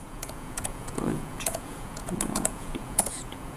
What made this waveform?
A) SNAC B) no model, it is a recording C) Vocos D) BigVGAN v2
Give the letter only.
C